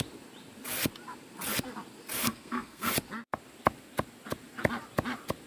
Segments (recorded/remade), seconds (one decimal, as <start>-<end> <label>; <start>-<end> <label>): 0.0-2.2 recorded; 2.2-2.9 remade; 2.9-5.5 recorded